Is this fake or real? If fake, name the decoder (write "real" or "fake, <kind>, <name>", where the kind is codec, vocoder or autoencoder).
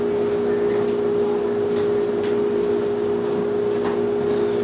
real